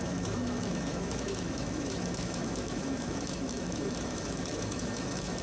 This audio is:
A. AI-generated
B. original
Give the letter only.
A